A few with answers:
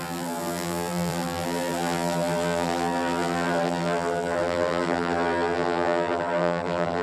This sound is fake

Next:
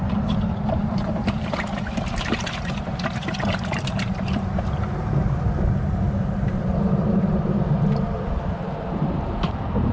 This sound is fake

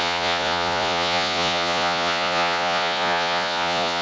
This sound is fake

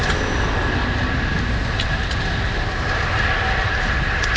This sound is real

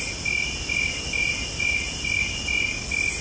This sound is real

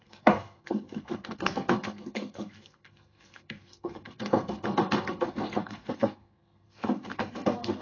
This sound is fake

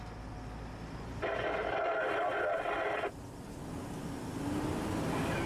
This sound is real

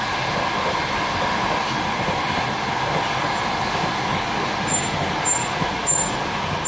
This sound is real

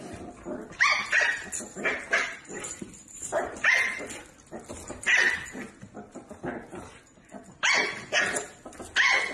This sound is real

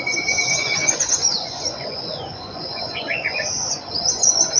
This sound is fake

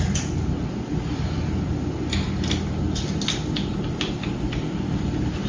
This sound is real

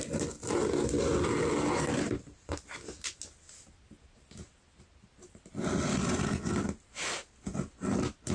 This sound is real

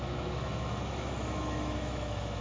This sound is fake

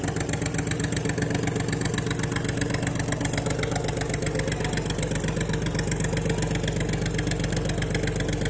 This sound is real